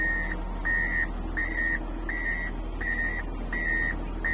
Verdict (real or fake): real